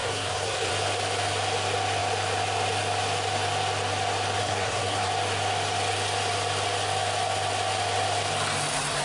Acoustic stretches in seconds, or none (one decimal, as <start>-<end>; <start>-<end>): 0.7-4.4; 5.1-9.0